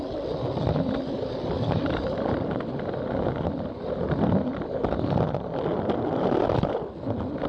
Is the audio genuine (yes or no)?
yes